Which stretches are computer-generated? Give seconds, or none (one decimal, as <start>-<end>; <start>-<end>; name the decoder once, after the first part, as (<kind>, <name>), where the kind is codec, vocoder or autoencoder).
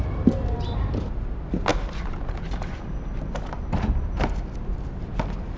none